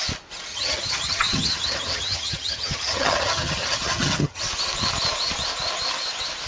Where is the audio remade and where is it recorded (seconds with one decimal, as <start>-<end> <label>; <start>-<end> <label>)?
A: 0.0-0.5 recorded; 0.5-4.4 remade; 4.4-6.5 recorded